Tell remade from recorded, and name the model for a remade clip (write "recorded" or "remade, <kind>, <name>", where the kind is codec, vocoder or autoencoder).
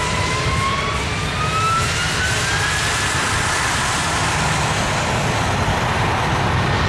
recorded